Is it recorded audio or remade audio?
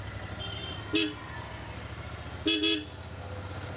recorded